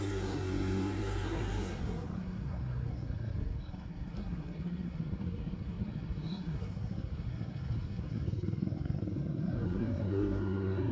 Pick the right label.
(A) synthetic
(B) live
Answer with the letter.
A